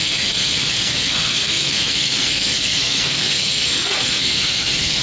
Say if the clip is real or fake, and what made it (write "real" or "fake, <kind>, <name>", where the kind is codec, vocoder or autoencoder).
fake, codec, SNAC